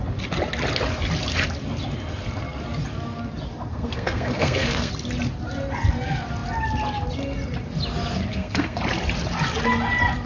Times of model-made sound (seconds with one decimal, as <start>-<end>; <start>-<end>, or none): 3.7-4.9; 8.3-8.8